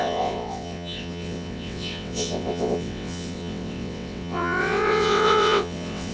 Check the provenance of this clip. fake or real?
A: fake